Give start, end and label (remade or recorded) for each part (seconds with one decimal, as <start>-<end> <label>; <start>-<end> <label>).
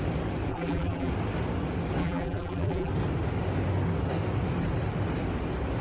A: 0.0-0.5 recorded; 0.5-1.1 remade; 1.1-2.0 recorded; 2.0-2.9 remade; 2.9-5.8 recorded